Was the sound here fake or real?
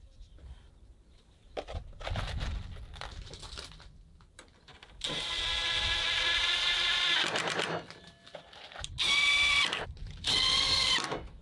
fake